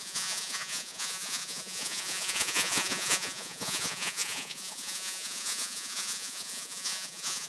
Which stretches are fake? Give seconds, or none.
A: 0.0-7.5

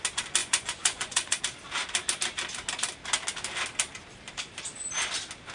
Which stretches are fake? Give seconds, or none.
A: 0.4-1.4